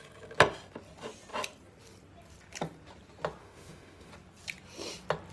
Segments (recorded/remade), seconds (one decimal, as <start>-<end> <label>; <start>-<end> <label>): 0.0-3.4 recorded; 3.4-4.1 remade; 4.1-5.3 recorded